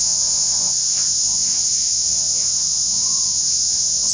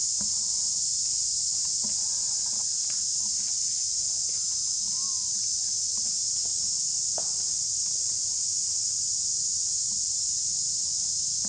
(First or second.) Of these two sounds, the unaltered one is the second